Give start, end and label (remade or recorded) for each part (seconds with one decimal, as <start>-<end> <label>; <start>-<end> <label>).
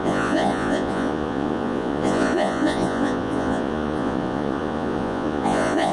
0.0-5.9 remade